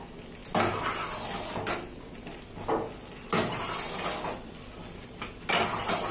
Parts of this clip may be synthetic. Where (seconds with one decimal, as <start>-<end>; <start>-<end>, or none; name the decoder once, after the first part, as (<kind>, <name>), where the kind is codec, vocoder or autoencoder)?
none